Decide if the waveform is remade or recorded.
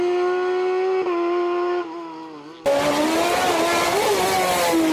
recorded